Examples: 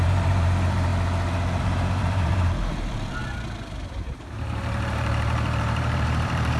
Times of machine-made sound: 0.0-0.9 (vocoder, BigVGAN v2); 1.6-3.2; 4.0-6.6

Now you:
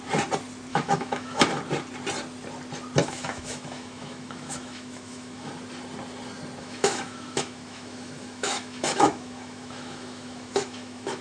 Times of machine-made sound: 0.7-1.4 (autoencoder, DAC-VAE); 3.0-5.5; 6.6-11.2

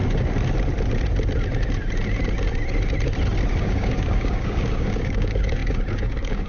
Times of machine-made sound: 3.6-6.5 (codec, DAC)

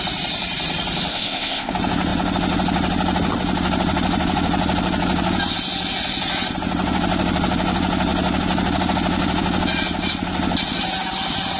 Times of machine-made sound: 1.1-1.7 (codec, ZipCodec)

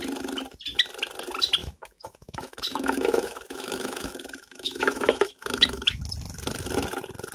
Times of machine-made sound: 1.6-6.0 (autoencoder, DAC-VAE)

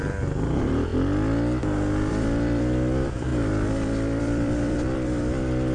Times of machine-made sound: 0.0-0.9 (vocoder, BigVGAN v2); 2.1-3.3; 4.2-5.7

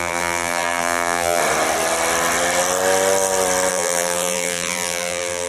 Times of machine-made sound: 0.0-1.4 (vocoder, BigVGAN v2); 3.7-5.5

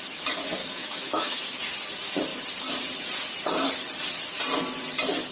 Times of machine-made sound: 0.6-1.6 (autoencoder, DAC-VAE)